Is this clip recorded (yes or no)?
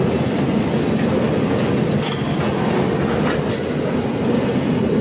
yes